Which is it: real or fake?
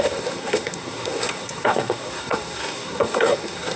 fake